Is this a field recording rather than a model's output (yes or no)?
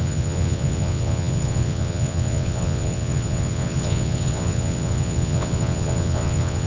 no